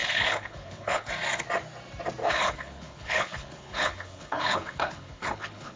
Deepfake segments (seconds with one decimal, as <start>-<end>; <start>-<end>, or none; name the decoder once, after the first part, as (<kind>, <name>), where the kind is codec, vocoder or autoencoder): 0.0-1.1 (codec, HILCodec); 2.2-5.8